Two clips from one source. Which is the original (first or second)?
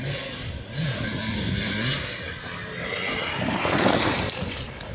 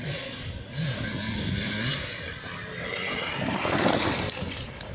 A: first